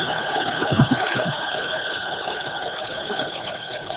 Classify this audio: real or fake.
fake